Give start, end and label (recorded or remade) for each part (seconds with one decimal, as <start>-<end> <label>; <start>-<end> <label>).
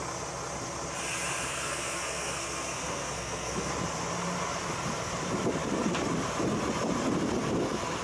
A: 0.0-1.5 recorded; 1.5-3.7 remade; 3.7-8.0 recorded